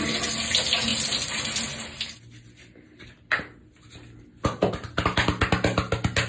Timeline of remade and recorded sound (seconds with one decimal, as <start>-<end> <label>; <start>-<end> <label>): 0.0-6.3 recorded